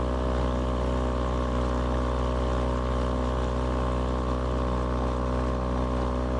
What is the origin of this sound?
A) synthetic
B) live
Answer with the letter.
B